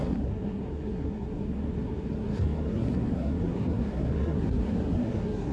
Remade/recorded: remade